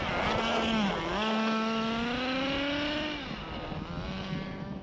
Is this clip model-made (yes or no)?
no